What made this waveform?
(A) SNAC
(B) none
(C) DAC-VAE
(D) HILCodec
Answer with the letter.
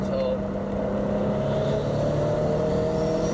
B